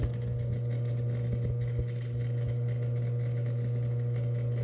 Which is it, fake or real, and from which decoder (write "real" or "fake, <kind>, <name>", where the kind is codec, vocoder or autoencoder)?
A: real